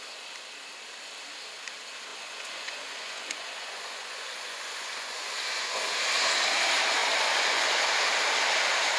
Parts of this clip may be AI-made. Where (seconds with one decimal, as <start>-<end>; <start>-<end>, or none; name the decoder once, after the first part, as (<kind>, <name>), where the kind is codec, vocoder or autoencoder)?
2.1-5.8 (vocoder, Vocos); 7.0-7.7